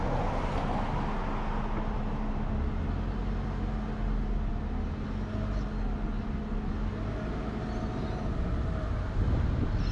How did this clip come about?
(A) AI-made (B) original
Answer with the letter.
B